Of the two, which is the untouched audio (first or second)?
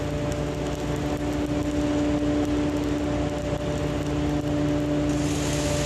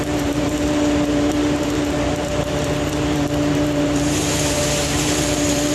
first